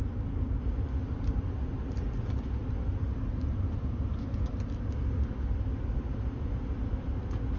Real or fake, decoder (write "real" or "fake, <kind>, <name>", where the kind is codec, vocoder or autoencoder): real